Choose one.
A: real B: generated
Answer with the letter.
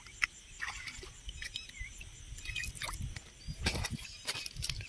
A